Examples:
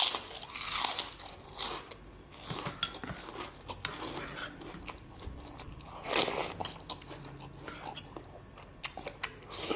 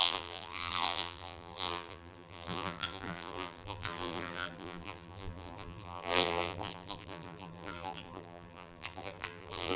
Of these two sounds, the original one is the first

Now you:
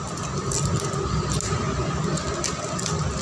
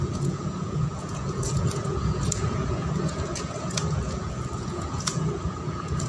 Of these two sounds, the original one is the first